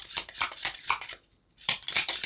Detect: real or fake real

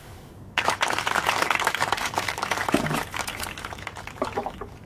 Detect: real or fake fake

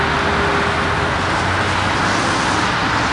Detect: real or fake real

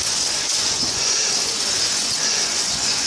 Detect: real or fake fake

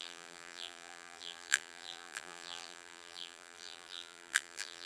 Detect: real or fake fake